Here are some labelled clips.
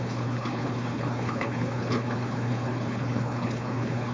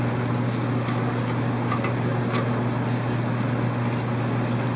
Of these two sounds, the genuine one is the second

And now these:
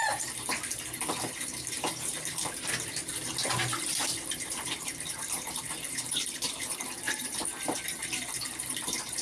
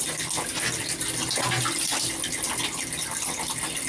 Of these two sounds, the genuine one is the second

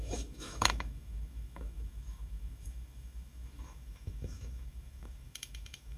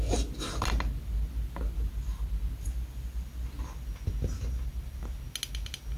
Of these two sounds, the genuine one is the second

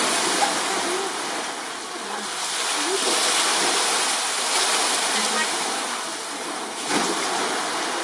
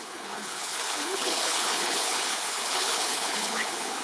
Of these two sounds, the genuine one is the first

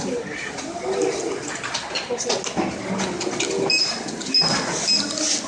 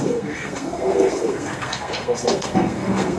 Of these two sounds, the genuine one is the first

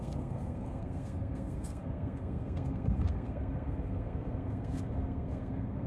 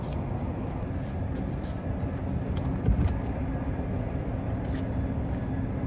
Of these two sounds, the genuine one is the second